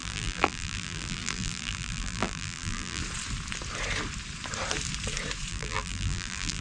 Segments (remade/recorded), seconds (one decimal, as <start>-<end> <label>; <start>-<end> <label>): 0.0-3.0 remade; 3.0-5.5 recorded; 5.5-6.6 remade